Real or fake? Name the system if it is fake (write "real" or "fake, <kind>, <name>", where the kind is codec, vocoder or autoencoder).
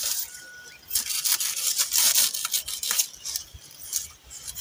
real